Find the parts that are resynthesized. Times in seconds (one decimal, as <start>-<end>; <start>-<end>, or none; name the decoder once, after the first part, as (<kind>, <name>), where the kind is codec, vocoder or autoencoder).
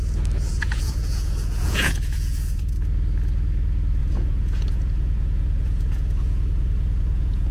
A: 0.5-2.6 (vocoder, Vocos); 4.0-7.5